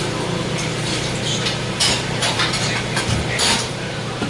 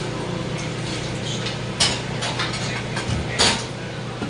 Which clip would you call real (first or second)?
second